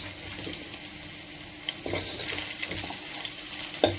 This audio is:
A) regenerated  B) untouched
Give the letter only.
B